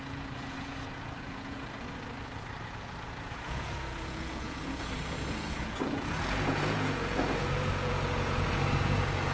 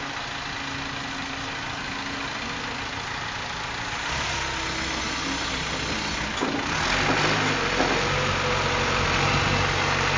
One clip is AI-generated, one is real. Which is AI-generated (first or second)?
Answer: first